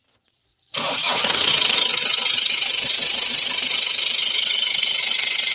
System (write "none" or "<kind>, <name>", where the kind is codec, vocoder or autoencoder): vocoder, Vocos